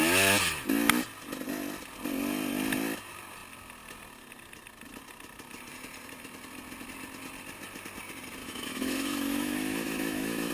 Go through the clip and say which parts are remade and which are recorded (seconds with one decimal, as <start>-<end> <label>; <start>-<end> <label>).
0.0-8.4 recorded; 8.4-10.5 remade